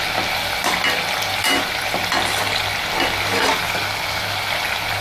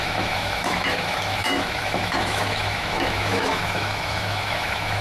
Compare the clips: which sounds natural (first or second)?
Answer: first